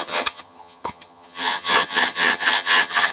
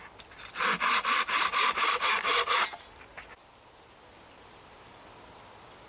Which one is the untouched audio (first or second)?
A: second